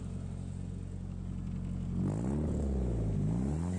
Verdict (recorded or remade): recorded